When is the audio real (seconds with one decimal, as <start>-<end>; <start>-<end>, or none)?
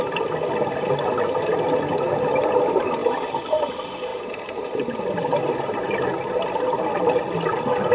0.0-4.1; 5.0-7.9